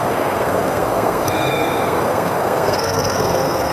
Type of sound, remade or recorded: remade